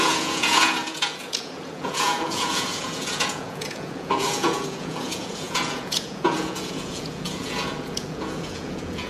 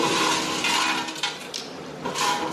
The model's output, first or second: first